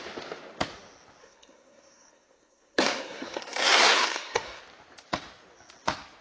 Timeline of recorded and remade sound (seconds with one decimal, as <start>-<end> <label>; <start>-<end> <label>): 0.0-1.2 recorded; 1.2-4.6 remade; 4.6-6.2 recorded